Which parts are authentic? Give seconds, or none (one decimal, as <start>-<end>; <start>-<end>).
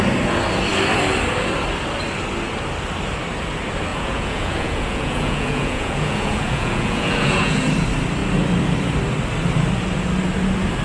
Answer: 0.0-3.9; 7.6-10.8